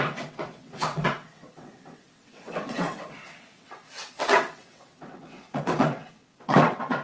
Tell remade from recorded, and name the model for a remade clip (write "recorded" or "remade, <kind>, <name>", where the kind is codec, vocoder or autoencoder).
remade, vocoder, WaveNeXt